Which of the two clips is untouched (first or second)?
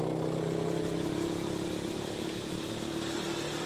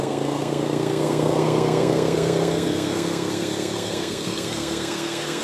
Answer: first